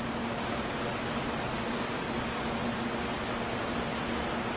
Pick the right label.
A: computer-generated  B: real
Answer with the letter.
B